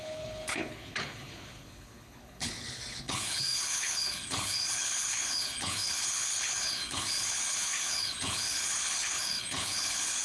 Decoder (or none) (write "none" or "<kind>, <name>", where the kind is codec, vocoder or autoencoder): codec, HILCodec